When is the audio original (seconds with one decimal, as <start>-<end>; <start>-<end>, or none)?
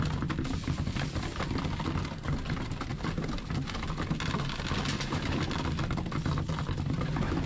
0.0-7.5